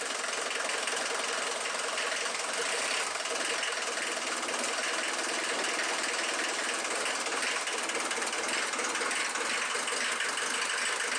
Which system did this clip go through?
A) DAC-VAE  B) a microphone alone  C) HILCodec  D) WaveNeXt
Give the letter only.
B